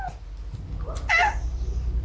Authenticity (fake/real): real